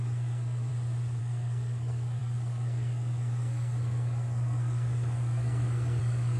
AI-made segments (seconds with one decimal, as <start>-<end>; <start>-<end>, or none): 0.0-0.7; 1.2-6.4